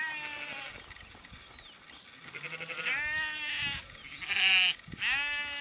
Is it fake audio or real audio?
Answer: real